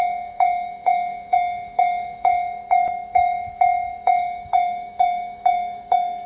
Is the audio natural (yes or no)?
no